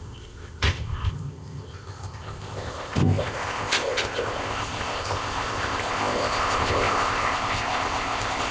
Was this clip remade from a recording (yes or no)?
yes